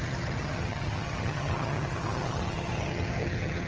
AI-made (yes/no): yes